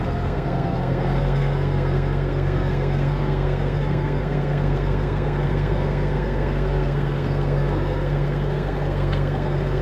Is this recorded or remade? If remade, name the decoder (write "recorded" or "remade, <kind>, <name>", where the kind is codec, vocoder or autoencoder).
remade, codec, SNAC